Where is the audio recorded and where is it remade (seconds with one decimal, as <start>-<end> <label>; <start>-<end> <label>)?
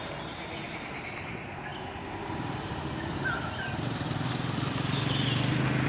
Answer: 0.0-1.7 recorded; 1.7-3.6 remade; 3.6-5.9 recorded